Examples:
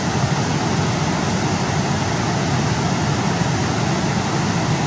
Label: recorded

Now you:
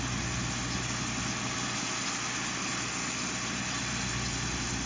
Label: recorded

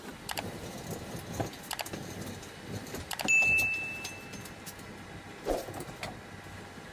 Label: recorded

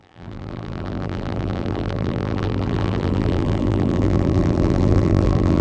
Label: remade